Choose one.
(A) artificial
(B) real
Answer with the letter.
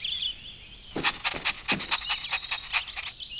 B